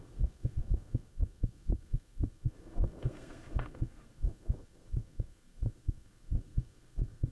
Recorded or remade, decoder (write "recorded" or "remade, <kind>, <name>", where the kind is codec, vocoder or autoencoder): remade, codec, SNAC